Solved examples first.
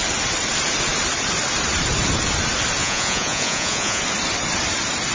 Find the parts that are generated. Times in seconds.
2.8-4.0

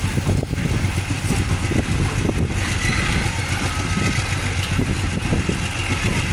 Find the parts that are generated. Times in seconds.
none

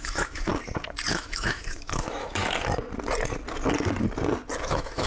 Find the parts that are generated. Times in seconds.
0.0-0.5; 1.1-2.4; 4.6-5.1

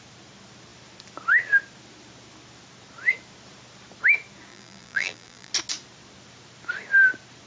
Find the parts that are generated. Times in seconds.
4.5-5.5